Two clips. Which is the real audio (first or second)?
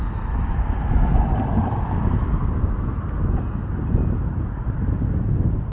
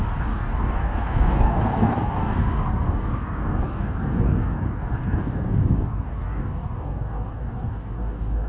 first